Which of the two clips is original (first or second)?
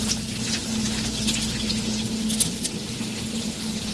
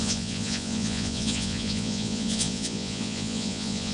first